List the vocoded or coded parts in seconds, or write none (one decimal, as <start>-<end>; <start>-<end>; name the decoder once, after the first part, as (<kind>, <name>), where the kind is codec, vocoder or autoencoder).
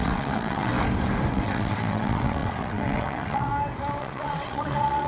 0.0-0.7 (vocoder, WaveNeXt); 1.3-3.5; 4.0-5.1